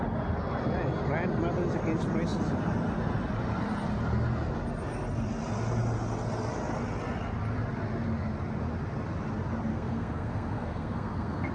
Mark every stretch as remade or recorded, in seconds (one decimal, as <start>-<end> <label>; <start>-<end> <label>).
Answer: 0.0-9.7 recorded; 9.7-11.5 remade